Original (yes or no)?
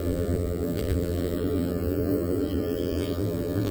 no